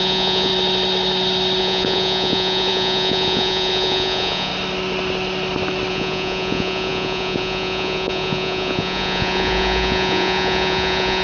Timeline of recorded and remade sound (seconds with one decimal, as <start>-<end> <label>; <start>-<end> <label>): 0.0-0.5 remade; 0.5-1.6 recorded; 1.6-4.5 remade; 4.5-5.9 recorded; 5.9-11.2 remade